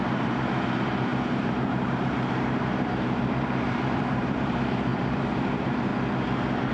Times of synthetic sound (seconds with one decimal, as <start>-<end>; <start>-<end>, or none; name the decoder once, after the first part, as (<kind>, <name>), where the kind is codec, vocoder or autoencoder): 0.0-5.9 (vocoder, BigVGAN v2)